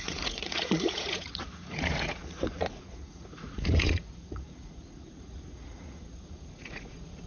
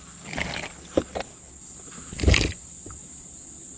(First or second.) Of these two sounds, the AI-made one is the first